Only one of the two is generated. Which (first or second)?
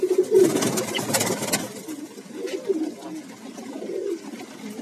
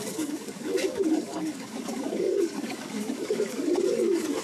second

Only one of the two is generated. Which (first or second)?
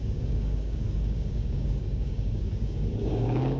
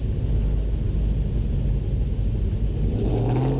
first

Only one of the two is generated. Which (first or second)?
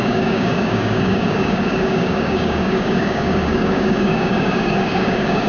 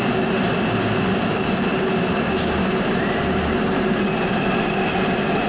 first